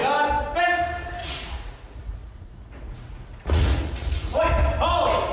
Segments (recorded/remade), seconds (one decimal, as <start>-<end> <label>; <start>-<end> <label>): 0.0-1.2 recorded; 1.2-4.4 remade; 4.4-5.3 recorded